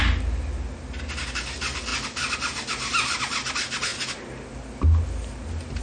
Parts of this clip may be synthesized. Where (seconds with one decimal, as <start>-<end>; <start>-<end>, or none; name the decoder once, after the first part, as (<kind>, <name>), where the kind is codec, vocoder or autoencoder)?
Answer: none